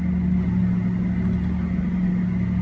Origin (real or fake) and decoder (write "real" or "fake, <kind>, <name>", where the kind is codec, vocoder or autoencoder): real